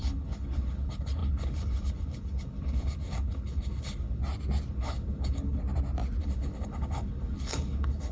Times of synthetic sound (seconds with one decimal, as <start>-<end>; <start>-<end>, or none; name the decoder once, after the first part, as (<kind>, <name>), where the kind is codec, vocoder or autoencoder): 0.0-4.2 (codec, HILCodec); 4.7-5.6; 6.2-8.1